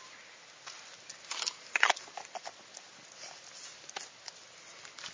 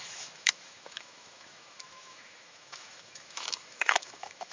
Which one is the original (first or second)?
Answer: first